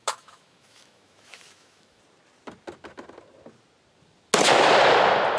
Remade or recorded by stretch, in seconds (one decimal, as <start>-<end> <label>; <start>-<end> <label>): 0.0-2.0 remade; 2.0-5.4 recorded

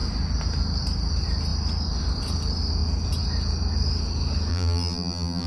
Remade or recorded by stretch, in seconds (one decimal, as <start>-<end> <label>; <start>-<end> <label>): 0.0-4.5 recorded; 4.5-5.5 remade

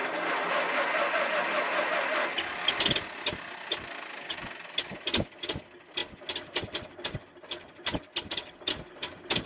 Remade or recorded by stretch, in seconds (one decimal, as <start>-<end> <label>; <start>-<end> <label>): 0.0-9.5 recorded